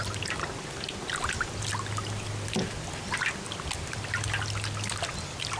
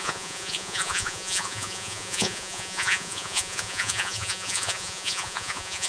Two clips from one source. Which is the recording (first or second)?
first